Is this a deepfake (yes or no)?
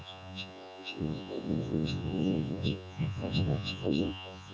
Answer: yes